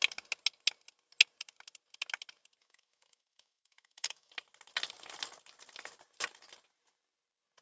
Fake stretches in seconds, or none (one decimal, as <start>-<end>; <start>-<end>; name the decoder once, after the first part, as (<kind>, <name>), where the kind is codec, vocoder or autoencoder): 2.6-4.3 (autoencoder, DAC-VAE)